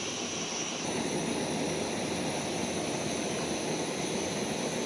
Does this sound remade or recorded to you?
recorded